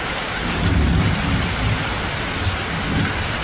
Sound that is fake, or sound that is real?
real